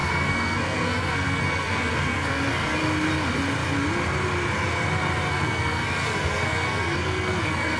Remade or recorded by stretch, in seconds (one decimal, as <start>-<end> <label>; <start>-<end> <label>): 0.0-2.8 remade; 2.8-5.3 recorded; 5.3-7.8 remade